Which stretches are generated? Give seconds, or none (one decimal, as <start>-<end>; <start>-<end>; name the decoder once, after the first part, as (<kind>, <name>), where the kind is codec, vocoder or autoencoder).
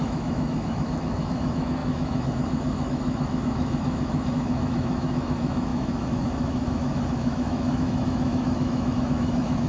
0.0-9.7 (autoencoder, DAC-VAE)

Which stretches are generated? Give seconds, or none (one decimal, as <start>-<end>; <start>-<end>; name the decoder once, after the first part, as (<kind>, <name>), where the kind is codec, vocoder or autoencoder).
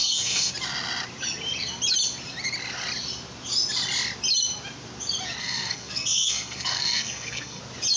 0.0-0.5 (codec, SNAC); 5.4-7.6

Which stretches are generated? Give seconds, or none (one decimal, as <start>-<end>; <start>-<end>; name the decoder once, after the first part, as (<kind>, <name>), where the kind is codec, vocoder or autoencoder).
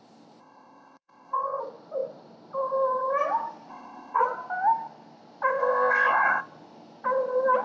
0.4-1.6 (codec, ZipCodec); 3.7-4.2; 5.6-6.4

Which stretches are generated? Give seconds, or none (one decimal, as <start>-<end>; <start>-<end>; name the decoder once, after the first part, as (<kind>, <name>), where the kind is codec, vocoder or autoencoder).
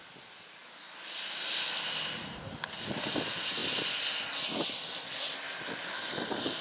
0.0-3.6 (vocoder, BigVGAN v2); 5.9-6.6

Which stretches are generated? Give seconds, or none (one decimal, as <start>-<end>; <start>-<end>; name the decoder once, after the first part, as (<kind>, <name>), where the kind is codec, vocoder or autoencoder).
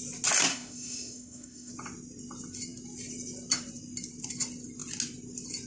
0.5-1.7 (autoencoder, DAC-VAE)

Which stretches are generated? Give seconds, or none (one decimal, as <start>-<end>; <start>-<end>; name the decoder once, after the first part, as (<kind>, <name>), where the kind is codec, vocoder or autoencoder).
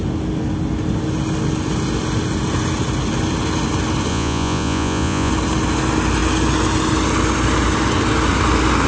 4.1-5.3 (vocoder, Vocos)